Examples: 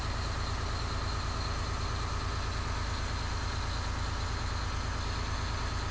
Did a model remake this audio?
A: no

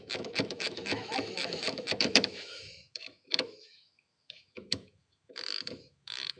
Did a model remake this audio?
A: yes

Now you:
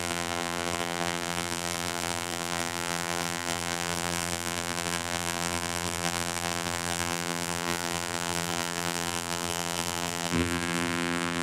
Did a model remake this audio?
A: yes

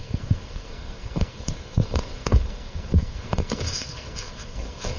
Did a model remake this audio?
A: yes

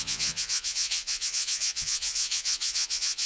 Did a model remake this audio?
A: yes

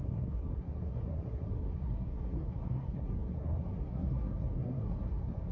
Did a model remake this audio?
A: yes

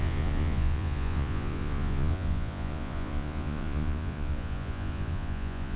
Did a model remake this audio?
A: yes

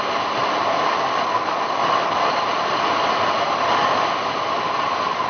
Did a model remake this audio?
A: no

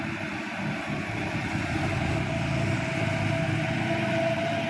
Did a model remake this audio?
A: no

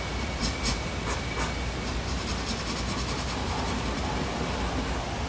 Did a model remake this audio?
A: no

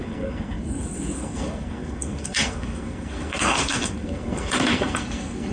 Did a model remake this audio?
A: yes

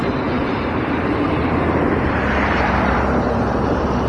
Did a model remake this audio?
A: yes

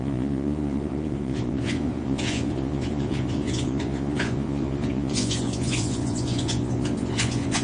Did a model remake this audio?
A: yes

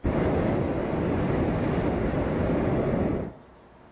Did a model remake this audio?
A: no